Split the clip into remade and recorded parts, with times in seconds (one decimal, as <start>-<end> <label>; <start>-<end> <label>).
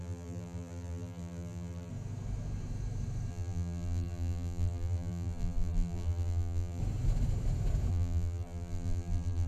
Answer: 0.0-1.9 remade; 1.9-3.3 recorded; 3.3-6.8 remade; 6.8-7.9 recorded; 7.9-9.5 remade